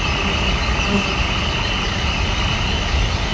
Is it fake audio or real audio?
real